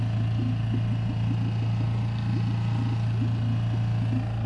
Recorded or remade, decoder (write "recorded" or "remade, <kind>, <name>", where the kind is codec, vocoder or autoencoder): recorded